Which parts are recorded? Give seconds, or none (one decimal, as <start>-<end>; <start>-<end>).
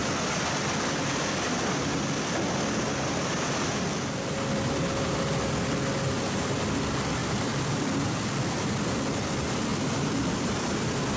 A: 0.0-7.2; 8.7-9.7; 10.3-11.2